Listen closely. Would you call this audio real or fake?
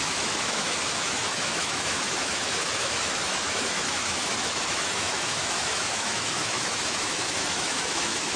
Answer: fake